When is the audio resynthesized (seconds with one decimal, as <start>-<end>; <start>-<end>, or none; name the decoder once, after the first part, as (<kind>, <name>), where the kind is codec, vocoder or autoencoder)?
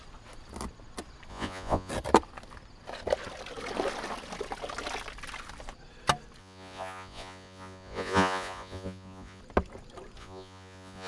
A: 1.3-1.9 (vocoder, Vocos); 6.4-9.4; 10.2-11.1